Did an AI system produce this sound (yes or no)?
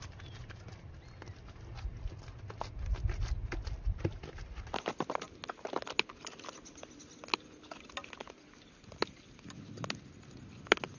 no